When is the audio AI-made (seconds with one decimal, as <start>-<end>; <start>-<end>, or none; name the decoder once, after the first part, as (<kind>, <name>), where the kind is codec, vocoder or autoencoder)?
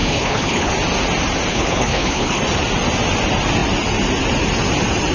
0.0-0.7 (codec, HILCodec); 1.5-2.4